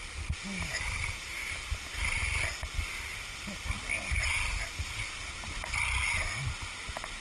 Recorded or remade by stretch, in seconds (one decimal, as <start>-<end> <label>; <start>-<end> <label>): 0.0-7.2 recorded